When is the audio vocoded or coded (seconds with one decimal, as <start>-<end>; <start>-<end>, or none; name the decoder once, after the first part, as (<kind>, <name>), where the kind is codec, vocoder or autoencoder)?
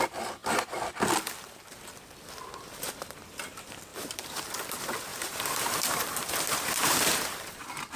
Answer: 3.9-4.5 (vocoder, BigVGAN v2); 5.1-7.6